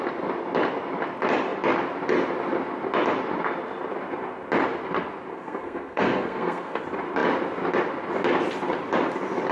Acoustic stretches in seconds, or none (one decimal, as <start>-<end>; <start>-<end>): 0.0-5.3; 6.8-9.5